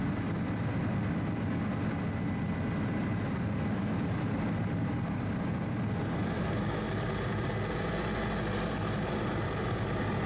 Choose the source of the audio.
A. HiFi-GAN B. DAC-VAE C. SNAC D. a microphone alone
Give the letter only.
D